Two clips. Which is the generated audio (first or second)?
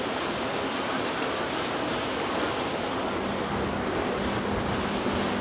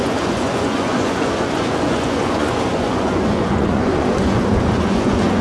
second